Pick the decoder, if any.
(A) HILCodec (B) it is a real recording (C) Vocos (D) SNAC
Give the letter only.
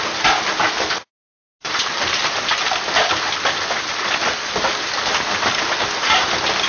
B